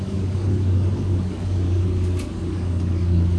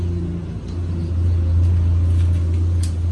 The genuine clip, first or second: second